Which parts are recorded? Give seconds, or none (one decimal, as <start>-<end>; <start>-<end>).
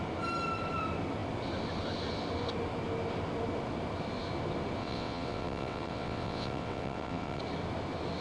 0.0-4.8; 7.4-8.2